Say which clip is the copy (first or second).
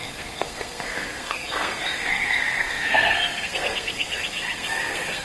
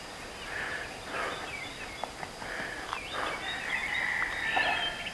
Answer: first